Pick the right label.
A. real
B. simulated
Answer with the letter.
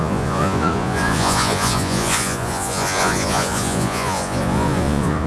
B